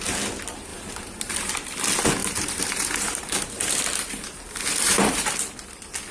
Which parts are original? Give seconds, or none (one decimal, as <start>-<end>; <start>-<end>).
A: 0.0-0.7; 1.5-2.2; 4.0-4.7; 5.3-6.1